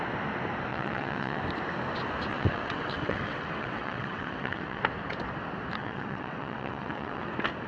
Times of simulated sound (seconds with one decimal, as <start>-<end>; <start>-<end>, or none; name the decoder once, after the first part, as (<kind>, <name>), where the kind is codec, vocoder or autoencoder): 0.7-1.4 (vocoder, WaveNeXt); 2.3-4.8; 5.8-7.3